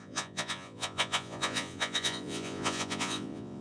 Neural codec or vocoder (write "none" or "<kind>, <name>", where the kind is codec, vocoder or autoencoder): vocoder, Vocos